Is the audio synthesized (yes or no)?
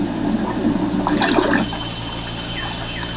no